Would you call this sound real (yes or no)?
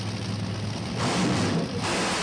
yes